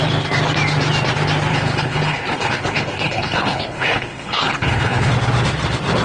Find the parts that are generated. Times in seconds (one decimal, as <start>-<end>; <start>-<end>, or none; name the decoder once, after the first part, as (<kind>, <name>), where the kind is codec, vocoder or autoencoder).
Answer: 1.5-5.1 (codec, HILCodec)